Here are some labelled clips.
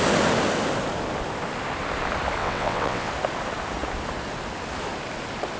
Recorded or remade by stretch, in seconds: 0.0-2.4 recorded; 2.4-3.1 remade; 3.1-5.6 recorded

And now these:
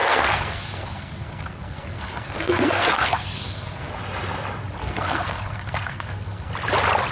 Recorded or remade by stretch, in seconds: 0.0-3.9 remade; 3.9-4.8 recorded; 4.8-6.5 remade; 6.5-7.1 recorded

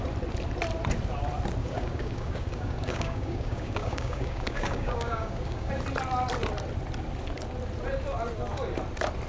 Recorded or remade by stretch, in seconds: 0.0-1.6 recorded; 1.6-5.7 remade; 5.7-9.3 recorded

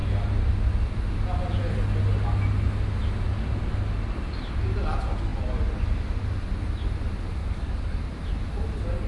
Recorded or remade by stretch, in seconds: 0.0-7.4 recorded; 7.4-8.0 remade; 8.0-9.1 recorded

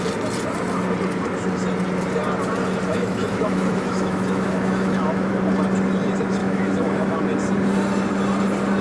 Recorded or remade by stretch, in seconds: 0.0-2.9 recorded; 2.9-5.3 remade; 5.3-6.4 recorded; 6.4-7.2 remade; 7.2-8.8 recorded

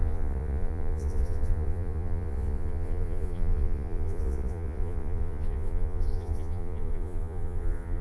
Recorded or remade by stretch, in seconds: 0.0-8.0 remade

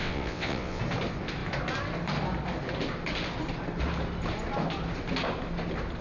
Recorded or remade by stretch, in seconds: 0.0-0.8 remade; 0.8-6.0 recorded

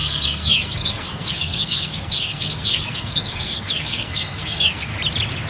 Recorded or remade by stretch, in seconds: 0.0-4.9 remade; 4.9-5.5 recorded